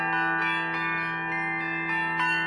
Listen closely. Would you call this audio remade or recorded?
recorded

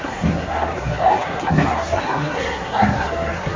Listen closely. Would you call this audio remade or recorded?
remade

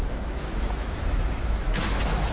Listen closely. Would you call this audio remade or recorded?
remade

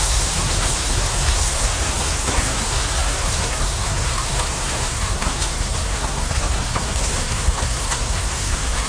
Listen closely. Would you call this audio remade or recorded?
remade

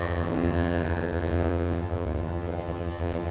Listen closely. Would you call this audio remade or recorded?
remade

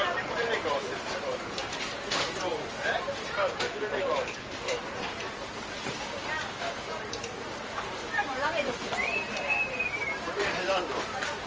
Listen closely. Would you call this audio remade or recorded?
remade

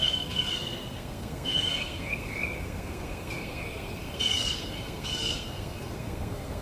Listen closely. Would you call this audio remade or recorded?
remade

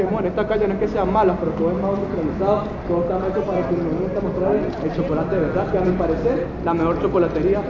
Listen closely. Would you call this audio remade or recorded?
recorded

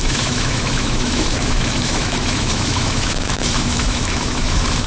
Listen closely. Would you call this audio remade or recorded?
remade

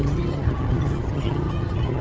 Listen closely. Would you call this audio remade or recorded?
remade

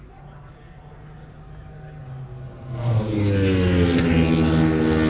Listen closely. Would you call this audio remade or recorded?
recorded